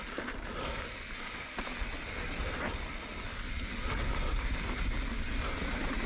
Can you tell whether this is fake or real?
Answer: real